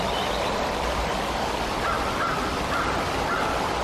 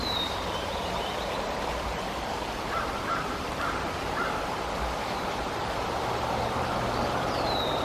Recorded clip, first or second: first